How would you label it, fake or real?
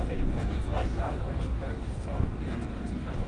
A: fake